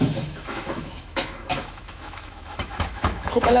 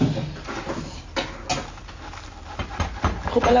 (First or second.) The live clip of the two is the second